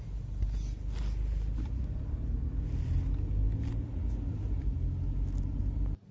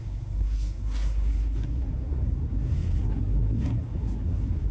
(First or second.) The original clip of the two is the first